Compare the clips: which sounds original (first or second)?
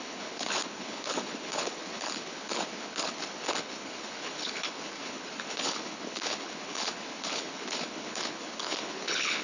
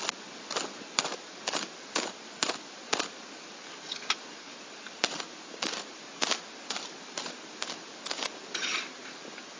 second